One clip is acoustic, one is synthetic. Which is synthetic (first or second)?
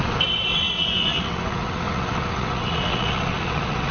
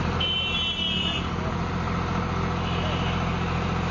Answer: first